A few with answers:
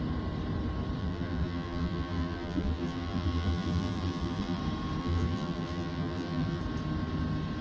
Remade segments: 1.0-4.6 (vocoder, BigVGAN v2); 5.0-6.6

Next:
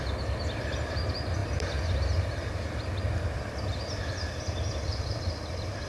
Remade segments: none

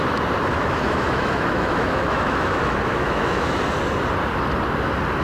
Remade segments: 0.5-3.6 (autoencoder, DAC-VAE)

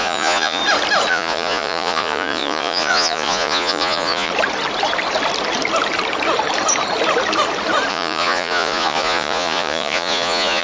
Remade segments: 0.0-0.6 (vocoder, Vocos); 1.1-4.3; 7.9-10.6

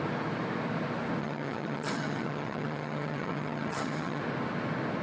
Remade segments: 1.2-4.2 (vocoder, HiFi-GAN)